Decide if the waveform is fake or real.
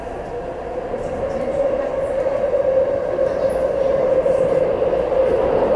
real